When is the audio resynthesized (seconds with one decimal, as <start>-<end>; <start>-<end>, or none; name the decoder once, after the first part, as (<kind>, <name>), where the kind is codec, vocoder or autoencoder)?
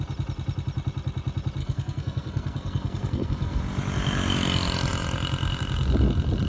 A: 1.6-3.6 (codec, SNAC)